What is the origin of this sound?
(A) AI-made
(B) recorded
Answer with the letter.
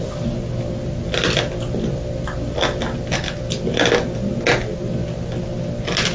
B